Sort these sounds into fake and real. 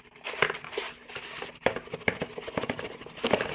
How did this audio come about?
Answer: real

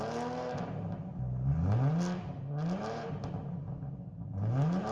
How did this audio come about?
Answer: real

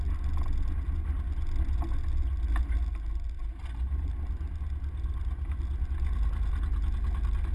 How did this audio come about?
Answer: real